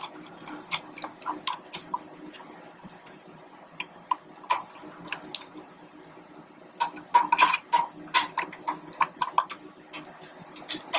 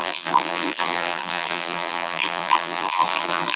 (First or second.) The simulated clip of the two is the second